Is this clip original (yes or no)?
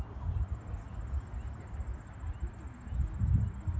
yes